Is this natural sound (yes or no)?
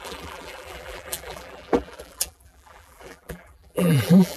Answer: no